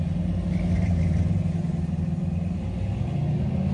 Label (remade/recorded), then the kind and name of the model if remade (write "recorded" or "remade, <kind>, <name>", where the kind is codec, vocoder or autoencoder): recorded